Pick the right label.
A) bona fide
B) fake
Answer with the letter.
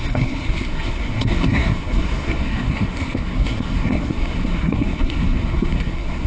B